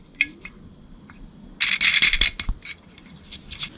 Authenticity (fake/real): real